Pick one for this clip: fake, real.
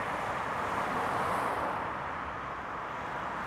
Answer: real